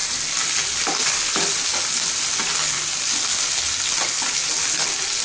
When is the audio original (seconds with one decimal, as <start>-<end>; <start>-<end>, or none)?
0.0-5.2